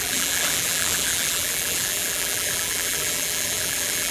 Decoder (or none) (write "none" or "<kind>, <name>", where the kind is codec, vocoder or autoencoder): vocoder, BigVGAN v2